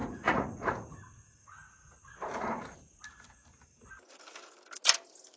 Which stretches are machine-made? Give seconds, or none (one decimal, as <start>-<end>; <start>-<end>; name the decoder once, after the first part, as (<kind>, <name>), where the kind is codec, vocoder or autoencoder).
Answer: 0.0-3.0 (vocoder, Vocos)